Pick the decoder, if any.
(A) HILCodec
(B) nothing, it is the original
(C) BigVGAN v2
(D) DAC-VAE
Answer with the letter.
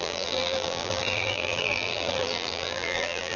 C